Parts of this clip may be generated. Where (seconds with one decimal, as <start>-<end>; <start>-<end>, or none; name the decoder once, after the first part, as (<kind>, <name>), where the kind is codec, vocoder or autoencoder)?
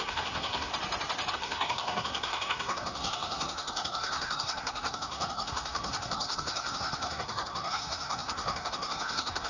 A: 0.0-0.7 (codec, SNAC); 1.3-9.5